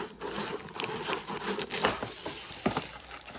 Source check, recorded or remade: recorded